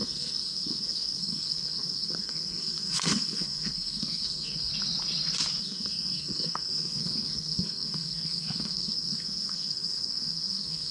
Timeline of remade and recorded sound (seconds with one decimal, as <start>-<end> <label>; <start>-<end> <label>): 0.0-4.7 remade; 4.7-5.6 recorded; 5.6-10.9 remade